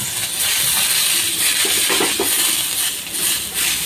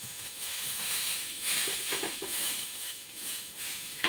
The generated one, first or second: second